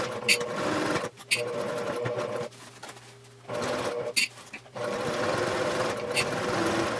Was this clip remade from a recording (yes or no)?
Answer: no